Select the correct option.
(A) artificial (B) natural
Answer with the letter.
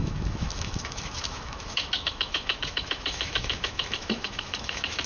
A